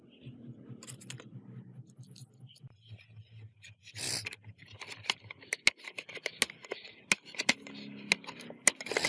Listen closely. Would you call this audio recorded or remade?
recorded